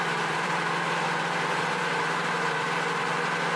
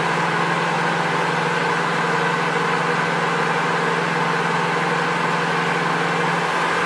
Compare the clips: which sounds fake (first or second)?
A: first